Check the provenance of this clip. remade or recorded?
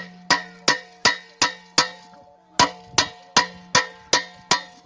recorded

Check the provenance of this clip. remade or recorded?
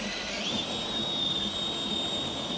recorded